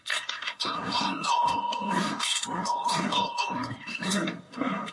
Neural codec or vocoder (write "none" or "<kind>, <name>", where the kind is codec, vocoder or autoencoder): codec, SNAC